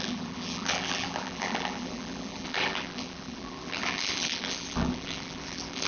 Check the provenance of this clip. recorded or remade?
remade